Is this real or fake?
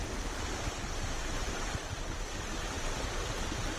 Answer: real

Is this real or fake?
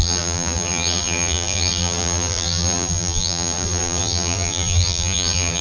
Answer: fake